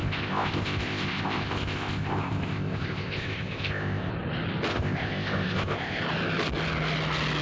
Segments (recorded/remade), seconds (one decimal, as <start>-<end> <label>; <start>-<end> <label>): 0.0-4.1 remade; 4.1-4.7 recorded; 4.7-6.0 remade; 6.0-7.4 recorded